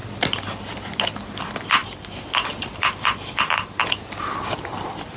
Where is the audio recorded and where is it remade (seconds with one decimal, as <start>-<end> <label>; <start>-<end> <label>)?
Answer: 0.0-5.2 recorded